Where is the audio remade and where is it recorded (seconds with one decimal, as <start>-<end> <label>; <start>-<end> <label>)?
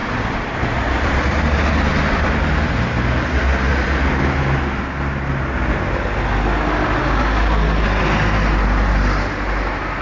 0.0-1.4 remade; 1.4-10.0 recorded